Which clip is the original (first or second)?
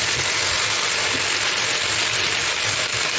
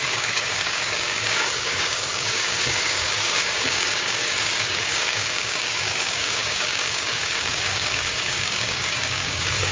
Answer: first